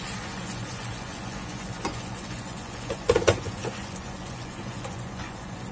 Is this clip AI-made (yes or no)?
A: yes